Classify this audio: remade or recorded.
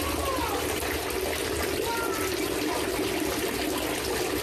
recorded